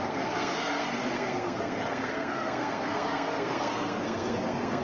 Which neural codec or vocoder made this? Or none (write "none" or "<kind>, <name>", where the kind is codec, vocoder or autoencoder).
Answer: codec, SNAC